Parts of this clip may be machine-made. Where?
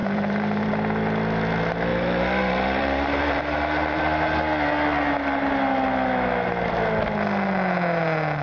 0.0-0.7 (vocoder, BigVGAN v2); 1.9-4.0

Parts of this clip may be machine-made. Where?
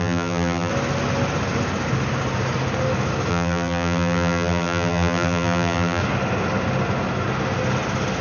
0.0-0.7 (vocoder, BigVGAN v2); 3.3-6.0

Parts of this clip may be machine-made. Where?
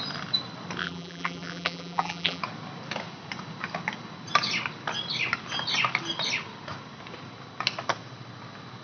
0.8-2.4 (vocoder, BigVGAN v2)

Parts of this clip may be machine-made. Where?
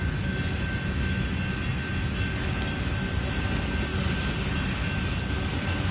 none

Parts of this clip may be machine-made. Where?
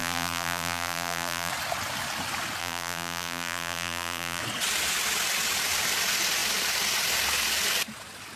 0.0-1.5 (vocoder, BigVGAN v2); 2.6-4.4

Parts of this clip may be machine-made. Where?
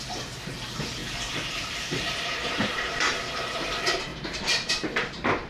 0.0-1.0 (vocoder, BigVGAN v2); 1.5-5.5